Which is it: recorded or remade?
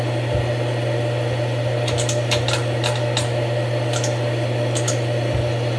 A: recorded